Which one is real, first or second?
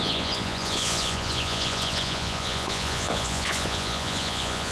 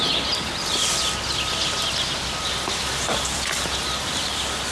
second